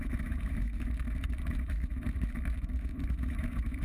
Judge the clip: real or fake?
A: fake